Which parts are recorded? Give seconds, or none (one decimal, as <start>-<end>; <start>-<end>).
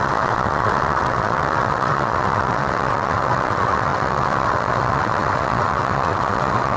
none